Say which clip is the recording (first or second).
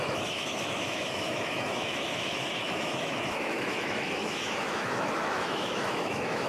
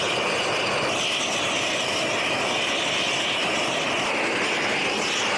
second